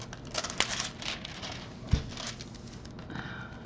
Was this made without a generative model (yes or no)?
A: yes